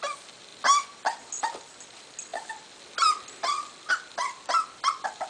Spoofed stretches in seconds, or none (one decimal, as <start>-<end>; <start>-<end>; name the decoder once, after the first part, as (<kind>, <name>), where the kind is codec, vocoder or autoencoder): none